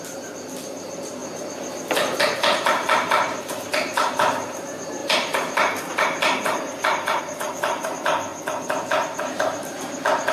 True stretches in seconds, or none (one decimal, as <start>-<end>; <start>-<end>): 1.2-2.2; 8.3-9.2